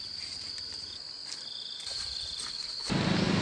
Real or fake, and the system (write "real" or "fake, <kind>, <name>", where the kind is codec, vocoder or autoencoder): real